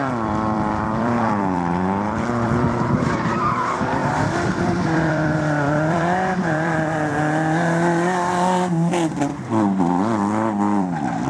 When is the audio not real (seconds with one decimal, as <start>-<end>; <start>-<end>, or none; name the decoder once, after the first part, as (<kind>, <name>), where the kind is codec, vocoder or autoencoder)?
0.0-7.1 (vocoder, BigVGAN v2); 9.4-11.3